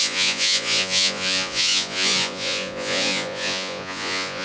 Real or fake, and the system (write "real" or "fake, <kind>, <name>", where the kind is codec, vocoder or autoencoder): fake, vocoder, Vocos